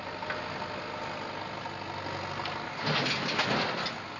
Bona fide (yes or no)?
yes